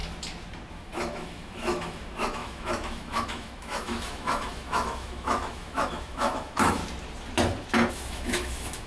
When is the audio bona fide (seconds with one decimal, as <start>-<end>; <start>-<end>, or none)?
0.0-0.7; 6.8-7.9